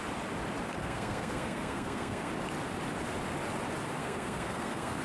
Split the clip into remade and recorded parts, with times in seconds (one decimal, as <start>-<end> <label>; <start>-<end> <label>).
0.0-0.8 recorded; 0.8-2.3 remade; 2.3-4.0 recorded; 4.0-5.0 remade